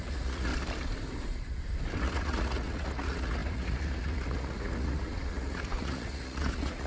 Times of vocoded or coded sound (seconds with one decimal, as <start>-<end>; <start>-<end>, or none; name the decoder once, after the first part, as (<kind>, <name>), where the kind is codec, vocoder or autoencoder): 0.0-0.5 (vocoder, Vocos); 2.0-6.9